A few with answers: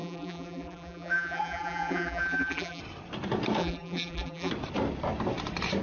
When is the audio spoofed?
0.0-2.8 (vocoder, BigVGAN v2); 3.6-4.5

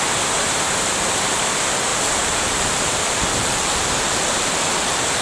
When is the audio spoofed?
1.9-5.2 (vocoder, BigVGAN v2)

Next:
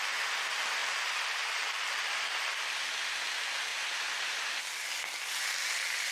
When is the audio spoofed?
0.8-1.6 (vocoder, BigVGAN v2); 3.7-4.6

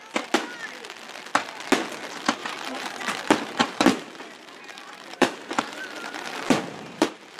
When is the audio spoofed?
2.4-2.9 (vocoder, BigVGAN v2); 3.6-7.4

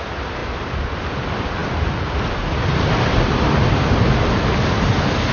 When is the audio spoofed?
0.4-0.9 (vocoder, BigVGAN v2)